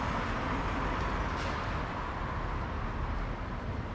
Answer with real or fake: real